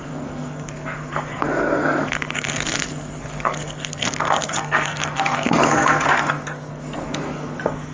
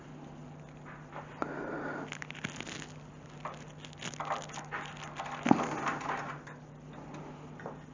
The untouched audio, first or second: second